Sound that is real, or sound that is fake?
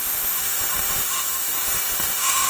fake